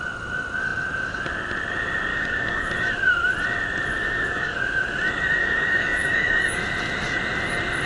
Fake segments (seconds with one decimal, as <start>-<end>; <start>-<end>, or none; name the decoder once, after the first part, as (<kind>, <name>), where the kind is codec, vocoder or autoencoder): 2.1-2.7 (codec, DAC); 4.0-4.6; 5.4-6.6